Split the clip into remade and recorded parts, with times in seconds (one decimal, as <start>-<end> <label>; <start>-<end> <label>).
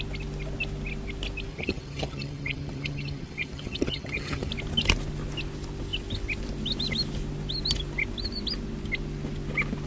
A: 0.0-1.5 recorded; 1.5-4.5 remade; 4.5-9.9 recorded